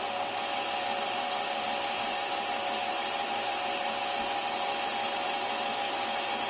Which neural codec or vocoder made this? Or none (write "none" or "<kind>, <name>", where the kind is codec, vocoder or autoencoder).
none